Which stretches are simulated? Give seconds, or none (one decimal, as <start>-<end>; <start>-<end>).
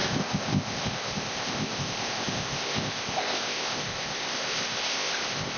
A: 0.0-5.6